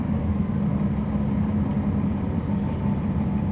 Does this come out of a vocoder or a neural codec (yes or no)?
no